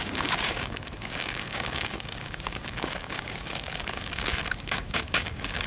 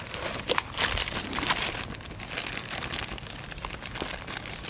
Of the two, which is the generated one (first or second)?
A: first